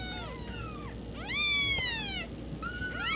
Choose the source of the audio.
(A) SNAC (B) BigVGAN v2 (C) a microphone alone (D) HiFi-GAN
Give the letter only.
C